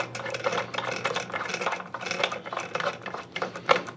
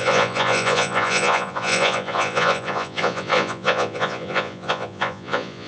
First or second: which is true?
first